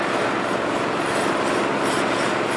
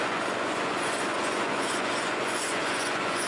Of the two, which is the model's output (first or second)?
second